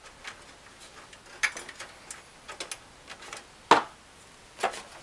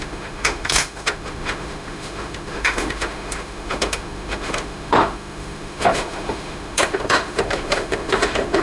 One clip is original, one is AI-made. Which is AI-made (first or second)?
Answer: second